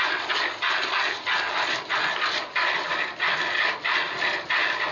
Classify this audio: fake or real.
real